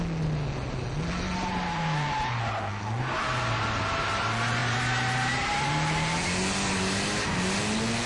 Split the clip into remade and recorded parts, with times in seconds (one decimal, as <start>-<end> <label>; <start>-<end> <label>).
0.0-4.6 recorded; 4.6-5.7 remade; 5.7-8.1 recorded